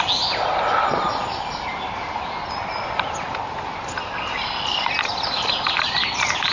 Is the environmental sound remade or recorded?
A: recorded